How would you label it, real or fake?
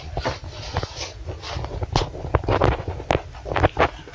real